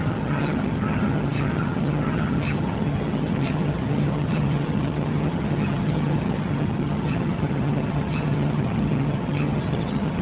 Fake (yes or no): yes